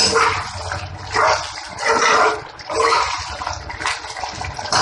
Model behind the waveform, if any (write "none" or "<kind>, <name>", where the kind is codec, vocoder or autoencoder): vocoder, BigVGAN v2